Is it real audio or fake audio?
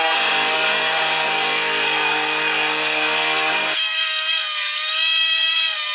fake